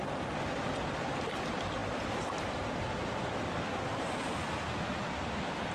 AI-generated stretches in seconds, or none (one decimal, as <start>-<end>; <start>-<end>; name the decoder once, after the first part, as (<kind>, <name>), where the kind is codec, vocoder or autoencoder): none